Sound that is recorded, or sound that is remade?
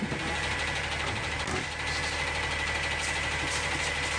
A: recorded